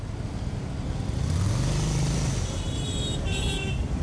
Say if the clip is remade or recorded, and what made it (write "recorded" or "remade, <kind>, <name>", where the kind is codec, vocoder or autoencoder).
recorded